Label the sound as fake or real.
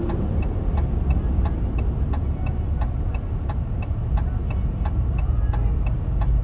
real